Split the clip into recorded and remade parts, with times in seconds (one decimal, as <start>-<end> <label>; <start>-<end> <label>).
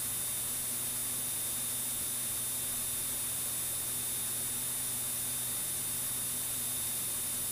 0.0-7.5 recorded